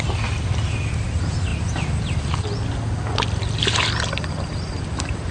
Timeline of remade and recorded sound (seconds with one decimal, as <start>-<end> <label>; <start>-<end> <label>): 0.0-5.3 recorded